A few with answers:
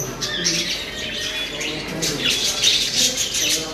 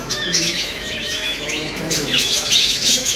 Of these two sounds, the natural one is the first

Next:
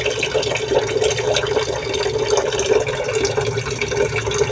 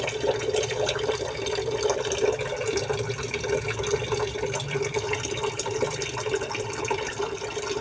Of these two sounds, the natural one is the first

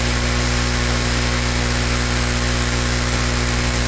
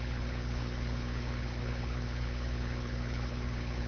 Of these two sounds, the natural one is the first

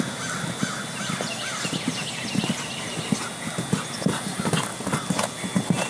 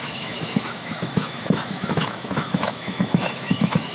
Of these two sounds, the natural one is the first